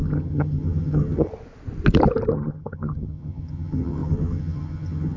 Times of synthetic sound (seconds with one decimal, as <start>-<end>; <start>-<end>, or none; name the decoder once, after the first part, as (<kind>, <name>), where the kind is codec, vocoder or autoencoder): 0.0-1.3 (vocoder, HiFi-GAN); 2.3-5.2